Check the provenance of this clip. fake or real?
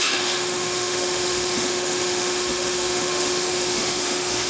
fake